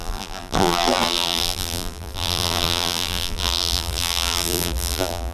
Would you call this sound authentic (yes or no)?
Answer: no